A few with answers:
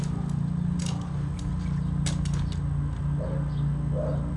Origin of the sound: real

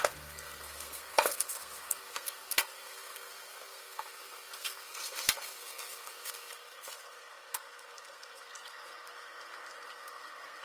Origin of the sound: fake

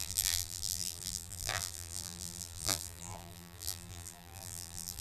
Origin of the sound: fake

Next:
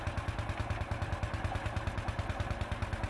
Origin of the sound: real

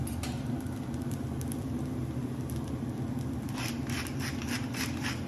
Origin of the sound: real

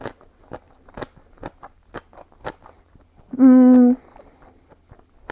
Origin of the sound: real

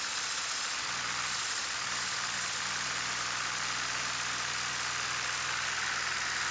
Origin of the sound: real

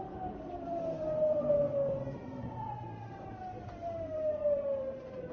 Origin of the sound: fake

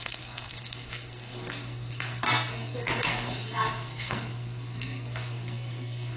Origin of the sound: fake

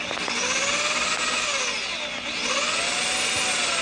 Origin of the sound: real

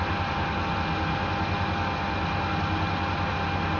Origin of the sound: real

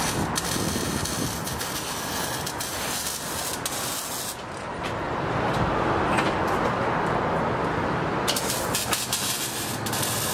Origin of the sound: real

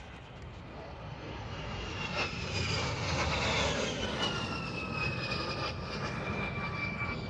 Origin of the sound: real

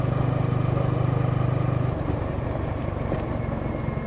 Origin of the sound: real